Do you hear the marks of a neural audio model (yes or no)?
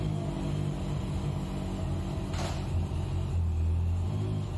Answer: no